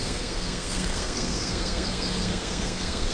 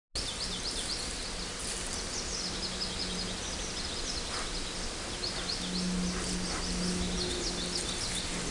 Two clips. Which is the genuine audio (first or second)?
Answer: second